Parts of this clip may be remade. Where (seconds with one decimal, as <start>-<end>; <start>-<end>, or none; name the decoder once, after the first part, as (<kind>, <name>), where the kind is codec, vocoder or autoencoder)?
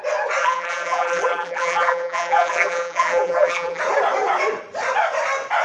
0.4-3.8 (vocoder, BigVGAN v2)